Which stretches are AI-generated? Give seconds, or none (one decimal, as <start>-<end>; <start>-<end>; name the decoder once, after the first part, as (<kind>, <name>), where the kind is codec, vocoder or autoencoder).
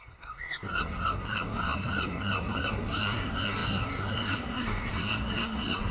0.0-5.9 (codec, SNAC)